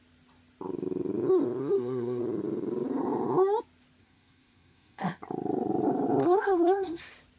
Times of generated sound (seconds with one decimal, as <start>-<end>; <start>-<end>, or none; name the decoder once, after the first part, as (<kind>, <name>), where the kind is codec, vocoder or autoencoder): 1.6-2.2 (codec, SNAC); 4.0-5.2; 6.2-7.0